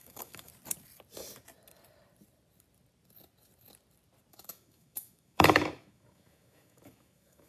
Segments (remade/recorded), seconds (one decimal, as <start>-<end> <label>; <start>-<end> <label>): 0.0-0.5 remade; 0.5-4.3 recorded; 4.3-7.5 remade